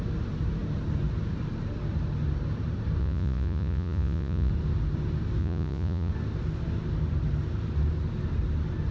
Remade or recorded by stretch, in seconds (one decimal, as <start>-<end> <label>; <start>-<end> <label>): 0.0-3.0 recorded; 3.0-4.5 remade; 4.5-5.4 recorded; 5.4-6.1 remade; 6.1-8.9 recorded